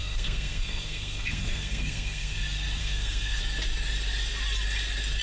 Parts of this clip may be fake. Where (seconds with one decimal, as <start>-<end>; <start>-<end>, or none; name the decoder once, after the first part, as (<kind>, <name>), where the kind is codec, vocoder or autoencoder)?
0.0-2.4 (codec, SNAC); 2.8-3.4